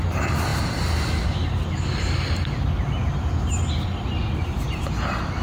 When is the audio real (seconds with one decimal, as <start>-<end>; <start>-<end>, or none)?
0.0-5.4